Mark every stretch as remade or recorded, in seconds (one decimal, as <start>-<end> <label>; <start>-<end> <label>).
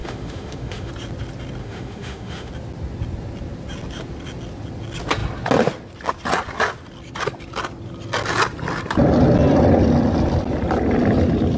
0.0-0.9 remade; 0.9-1.6 recorded; 1.6-2.5 remade; 2.5-11.6 recorded